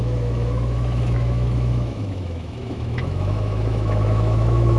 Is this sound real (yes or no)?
no